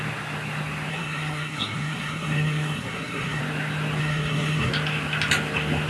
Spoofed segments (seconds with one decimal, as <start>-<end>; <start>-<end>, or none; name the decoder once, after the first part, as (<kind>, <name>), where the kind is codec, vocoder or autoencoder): 0.9-3.4 (codec, SNAC); 4.0-4.7